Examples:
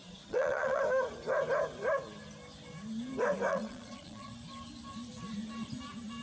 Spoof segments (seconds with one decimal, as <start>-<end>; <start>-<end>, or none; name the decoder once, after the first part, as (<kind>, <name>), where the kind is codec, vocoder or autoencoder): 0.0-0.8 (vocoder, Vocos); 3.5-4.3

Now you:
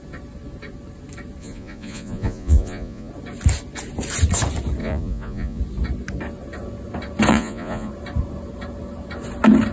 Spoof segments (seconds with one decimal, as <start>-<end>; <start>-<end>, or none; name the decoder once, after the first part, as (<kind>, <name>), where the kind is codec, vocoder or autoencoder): 1.4-3.1 (vocoder, Vocos); 4.8-5.6; 7.3-7.9

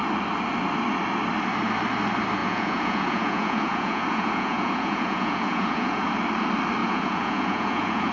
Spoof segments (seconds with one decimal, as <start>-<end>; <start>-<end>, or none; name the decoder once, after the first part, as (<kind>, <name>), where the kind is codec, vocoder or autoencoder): 2.4-6.1 (vocoder, Vocos); 6.8-8.1

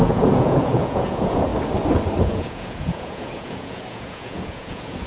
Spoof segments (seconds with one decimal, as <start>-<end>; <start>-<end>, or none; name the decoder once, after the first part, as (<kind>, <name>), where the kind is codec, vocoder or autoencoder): 0.0-1.5 (vocoder, Vocos); 2.2-5.1

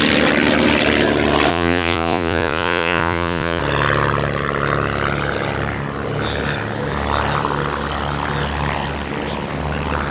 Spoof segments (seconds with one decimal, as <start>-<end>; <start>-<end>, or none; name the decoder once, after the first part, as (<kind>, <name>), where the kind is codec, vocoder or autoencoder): 1.5-3.6 (vocoder, Vocos)